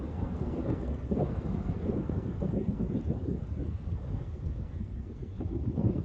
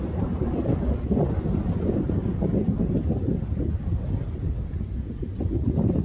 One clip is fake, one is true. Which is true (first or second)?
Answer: second